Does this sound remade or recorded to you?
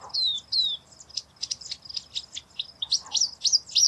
recorded